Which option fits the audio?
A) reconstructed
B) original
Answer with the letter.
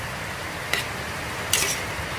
B